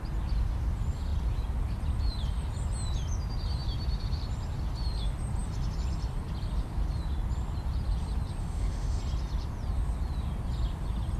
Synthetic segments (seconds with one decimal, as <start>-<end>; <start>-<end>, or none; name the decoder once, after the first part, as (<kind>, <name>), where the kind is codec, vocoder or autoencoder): 8.4-9.0 (autoencoder, DAC-VAE)